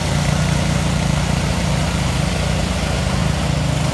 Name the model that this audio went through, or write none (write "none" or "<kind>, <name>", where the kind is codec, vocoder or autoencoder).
none